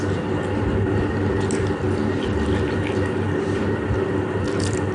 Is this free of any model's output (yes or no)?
yes